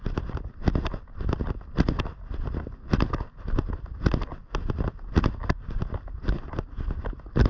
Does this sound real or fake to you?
real